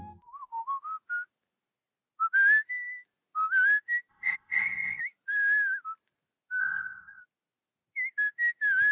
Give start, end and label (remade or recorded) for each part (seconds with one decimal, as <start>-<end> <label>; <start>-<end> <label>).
0.0-4.1 recorded; 4.1-5.0 remade; 5.0-6.6 recorded; 6.6-7.2 remade; 7.2-8.9 recorded